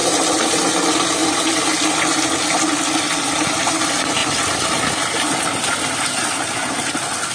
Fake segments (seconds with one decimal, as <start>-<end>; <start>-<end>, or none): none